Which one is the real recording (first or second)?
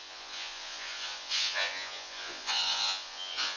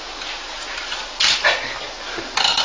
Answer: second